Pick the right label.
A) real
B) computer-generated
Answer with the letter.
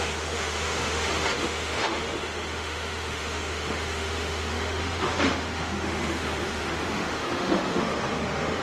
B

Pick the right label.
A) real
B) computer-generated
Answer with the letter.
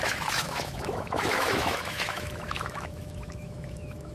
B